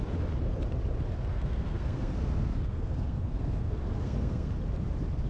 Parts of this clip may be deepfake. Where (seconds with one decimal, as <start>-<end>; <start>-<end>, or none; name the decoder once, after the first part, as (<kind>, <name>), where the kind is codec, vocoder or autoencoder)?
1.3-4.5 (codec, SNAC)